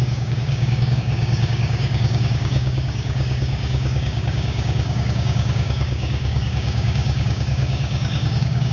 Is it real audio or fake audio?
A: fake